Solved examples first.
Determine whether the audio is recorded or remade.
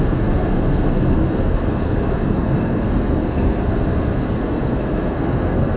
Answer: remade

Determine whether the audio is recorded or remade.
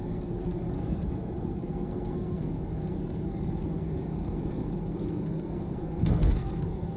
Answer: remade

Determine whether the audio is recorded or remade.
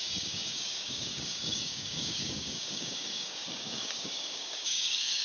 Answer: remade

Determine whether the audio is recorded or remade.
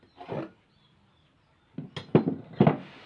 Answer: recorded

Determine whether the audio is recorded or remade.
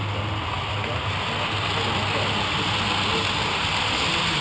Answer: recorded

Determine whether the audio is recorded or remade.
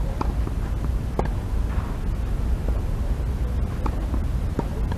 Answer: recorded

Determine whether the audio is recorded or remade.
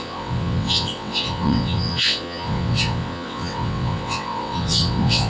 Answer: remade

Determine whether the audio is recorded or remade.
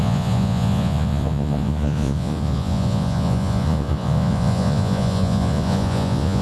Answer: remade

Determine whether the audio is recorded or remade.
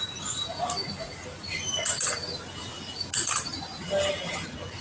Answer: recorded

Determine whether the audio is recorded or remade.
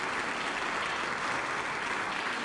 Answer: recorded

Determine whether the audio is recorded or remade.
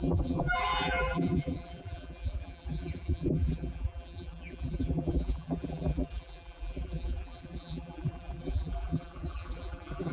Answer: remade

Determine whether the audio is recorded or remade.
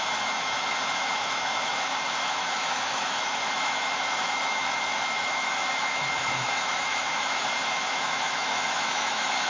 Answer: remade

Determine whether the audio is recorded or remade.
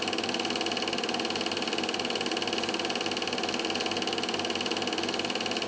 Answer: recorded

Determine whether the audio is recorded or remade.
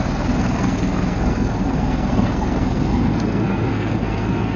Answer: remade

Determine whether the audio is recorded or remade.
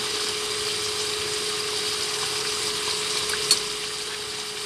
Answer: recorded